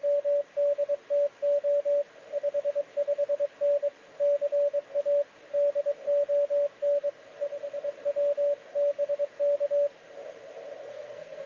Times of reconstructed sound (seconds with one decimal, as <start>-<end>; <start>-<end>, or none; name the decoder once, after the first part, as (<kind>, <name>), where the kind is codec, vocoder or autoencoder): 10.9-11.5 (codec, SNAC)